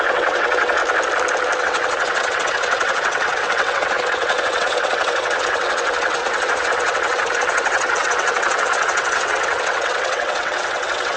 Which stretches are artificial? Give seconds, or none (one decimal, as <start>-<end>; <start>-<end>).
0.0-0.8; 1.6-11.2